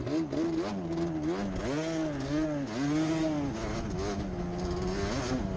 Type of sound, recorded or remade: recorded